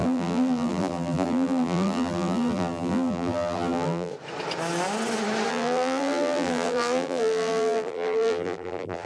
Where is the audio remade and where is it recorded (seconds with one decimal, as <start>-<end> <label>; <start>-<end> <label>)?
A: 0.0-4.1 remade; 4.1-5.5 recorded; 5.5-9.1 remade

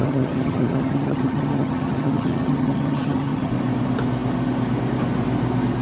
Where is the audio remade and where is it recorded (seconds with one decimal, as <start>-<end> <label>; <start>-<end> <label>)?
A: 0.0-3.5 remade; 3.5-5.8 recorded

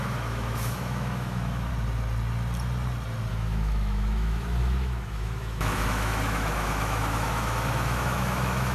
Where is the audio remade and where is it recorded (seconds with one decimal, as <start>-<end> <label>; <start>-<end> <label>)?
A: 0.0-1.7 remade; 1.7-3.3 recorded; 3.3-8.7 remade

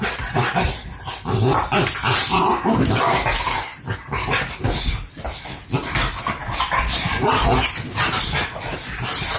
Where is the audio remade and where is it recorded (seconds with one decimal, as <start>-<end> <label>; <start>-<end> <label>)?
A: 0.0-9.4 recorded